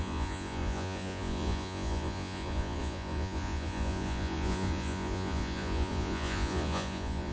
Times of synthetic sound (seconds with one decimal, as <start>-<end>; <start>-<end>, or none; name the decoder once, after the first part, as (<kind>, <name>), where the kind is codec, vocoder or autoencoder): 0.0-7.3 (vocoder, Vocos)